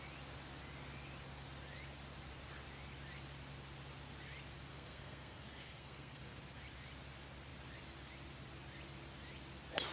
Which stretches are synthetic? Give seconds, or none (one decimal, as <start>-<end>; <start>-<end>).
4.7-6.4